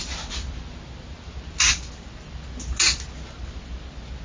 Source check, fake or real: real